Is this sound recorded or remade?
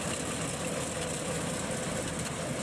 remade